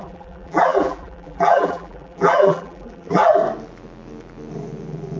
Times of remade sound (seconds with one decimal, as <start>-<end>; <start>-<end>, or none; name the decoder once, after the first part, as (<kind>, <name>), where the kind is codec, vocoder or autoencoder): 0.0-3.4 (vocoder, BigVGAN v2)